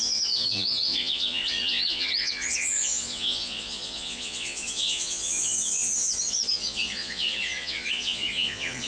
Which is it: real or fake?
fake